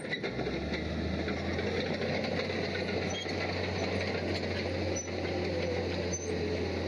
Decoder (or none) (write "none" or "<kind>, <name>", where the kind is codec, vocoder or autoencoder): none